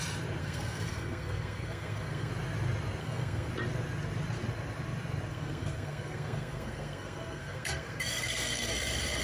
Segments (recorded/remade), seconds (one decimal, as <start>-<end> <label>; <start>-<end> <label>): 0.0-0.4 recorded; 0.4-2.3 remade; 2.3-3.0 recorded; 3.0-3.5 remade; 3.5-5.3 recorded; 5.3-8.7 remade; 8.7-9.2 recorded